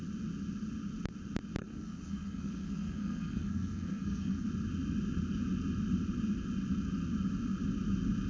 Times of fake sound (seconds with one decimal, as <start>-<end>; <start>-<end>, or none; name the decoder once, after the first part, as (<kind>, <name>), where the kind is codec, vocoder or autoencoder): 1.6-4.5 (codec, SNAC)